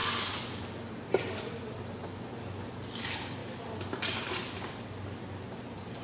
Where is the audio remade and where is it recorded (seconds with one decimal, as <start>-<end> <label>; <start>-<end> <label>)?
0.0-6.0 recorded